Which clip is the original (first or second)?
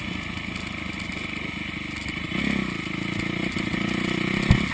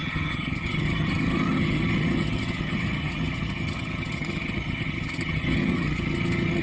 first